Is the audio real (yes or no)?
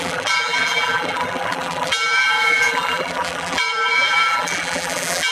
no